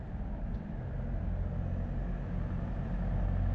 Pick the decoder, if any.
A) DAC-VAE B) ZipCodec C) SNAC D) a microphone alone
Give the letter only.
D